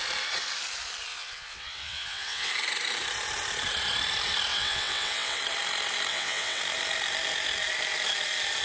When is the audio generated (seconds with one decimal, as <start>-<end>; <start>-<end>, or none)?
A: 1.1-2.5; 4.5-5.4; 6.1-6.6